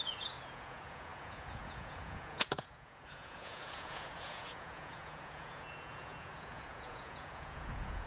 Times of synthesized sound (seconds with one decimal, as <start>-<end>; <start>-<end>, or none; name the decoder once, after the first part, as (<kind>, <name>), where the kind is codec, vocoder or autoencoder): 0.0-8.1 (vocoder, Vocos)